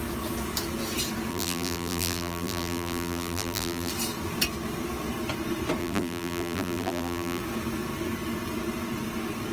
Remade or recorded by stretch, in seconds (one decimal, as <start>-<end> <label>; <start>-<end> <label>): 0.0-1.3 recorded; 1.3-3.9 remade; 3.9-5.8 recorded; 5.8-7.4 remade; 7.4-9.5 recorded